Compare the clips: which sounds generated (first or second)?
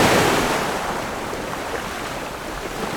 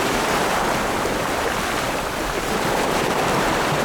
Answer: first